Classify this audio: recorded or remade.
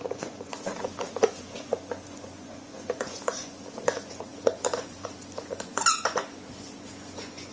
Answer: remade